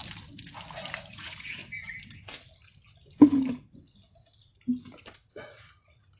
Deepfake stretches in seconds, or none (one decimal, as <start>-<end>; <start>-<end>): 1.1-1.6; 5.3-6.2